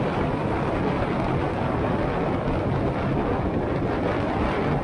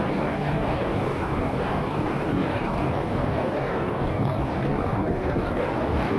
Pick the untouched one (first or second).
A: first